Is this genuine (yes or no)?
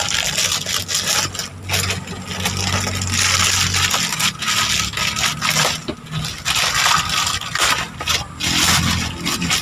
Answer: yes